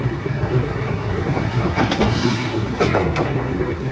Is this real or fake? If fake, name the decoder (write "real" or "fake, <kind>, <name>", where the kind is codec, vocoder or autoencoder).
fake, codec, SNAC